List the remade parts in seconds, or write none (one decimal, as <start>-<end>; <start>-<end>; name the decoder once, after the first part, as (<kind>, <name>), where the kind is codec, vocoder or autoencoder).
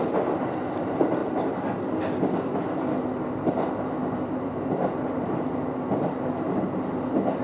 none